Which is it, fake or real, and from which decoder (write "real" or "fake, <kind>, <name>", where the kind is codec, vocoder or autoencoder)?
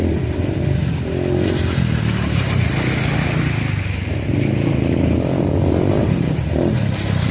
real